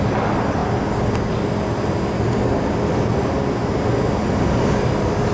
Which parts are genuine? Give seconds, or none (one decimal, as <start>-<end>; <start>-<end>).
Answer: 0.0-5.3